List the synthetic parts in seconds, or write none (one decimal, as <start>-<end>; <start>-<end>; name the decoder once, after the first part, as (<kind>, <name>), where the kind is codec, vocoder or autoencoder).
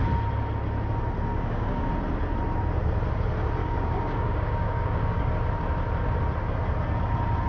1.3-1.9 (codec, DAC); 3.6-5.3